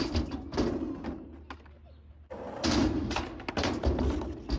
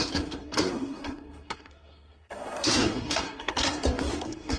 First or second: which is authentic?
first